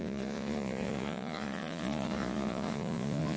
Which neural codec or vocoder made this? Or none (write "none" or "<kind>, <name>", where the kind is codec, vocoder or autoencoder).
vocoder, Vocos